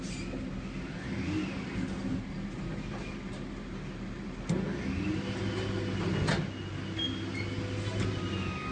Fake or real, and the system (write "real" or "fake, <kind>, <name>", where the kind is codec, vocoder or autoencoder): real